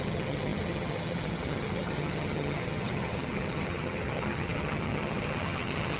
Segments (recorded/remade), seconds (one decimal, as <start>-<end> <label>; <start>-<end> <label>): 0.0-6.0 remade